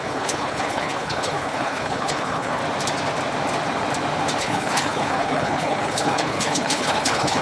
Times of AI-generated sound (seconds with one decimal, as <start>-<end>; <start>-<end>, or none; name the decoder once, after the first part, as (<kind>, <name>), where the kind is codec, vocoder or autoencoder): 0.0-2.6 (codec, HILCodec); 4.4-7.4